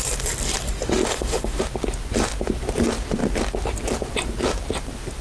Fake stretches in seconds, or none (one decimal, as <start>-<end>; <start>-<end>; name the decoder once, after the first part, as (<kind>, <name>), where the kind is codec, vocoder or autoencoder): 1.1-1.6 (autoencoder, DAC-VAE)